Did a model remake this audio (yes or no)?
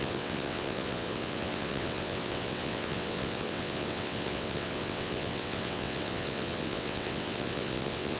yes